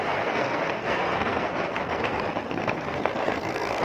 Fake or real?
fake